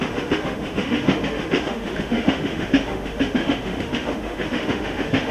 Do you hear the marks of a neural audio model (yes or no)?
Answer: yes